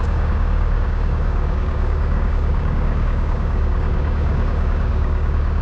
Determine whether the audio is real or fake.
fake